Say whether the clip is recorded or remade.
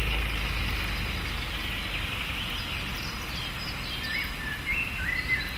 recorded